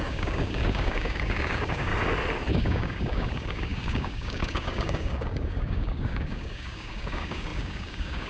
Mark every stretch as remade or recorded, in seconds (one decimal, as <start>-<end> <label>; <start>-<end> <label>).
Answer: 0.0-1.9 remade; 1.9-2.5 recorded; 2.5-8.3 remade